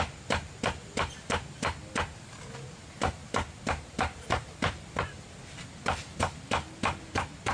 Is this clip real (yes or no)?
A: yes